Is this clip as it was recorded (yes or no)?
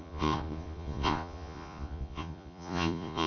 no